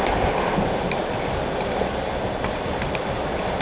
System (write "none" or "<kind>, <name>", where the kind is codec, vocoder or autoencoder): none